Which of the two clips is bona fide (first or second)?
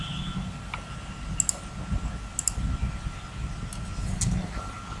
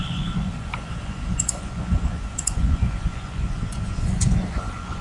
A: first